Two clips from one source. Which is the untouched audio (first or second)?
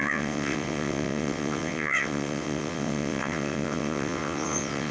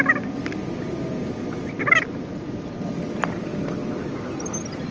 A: second